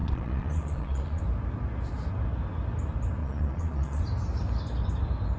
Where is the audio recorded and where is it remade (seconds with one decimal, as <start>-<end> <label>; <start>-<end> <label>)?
0.0-1.2 remade; 1.2-3.2 recorded; 3.2-4.0 remade; 4.0-5.4 recorded